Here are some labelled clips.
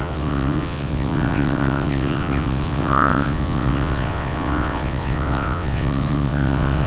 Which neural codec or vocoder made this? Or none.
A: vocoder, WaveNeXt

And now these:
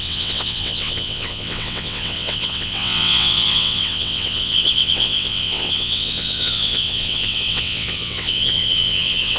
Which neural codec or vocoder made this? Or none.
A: vocoder, WaveNeXt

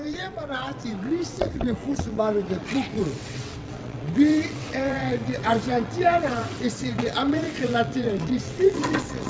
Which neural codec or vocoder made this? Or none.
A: vocoder, WaveNeXt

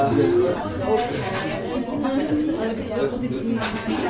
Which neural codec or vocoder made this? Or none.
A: none